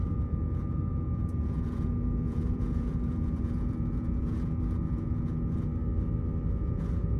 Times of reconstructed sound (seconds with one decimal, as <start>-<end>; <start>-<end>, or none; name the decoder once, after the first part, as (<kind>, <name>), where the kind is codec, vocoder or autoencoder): 0.0-5.7 (vocoder, Vocos); 6.5-7.2